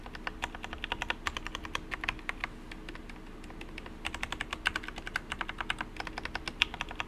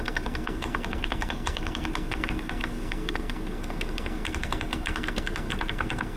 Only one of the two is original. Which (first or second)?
first